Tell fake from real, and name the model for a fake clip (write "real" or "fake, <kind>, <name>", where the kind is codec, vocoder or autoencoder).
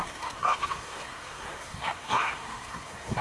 fake, codec, SNAC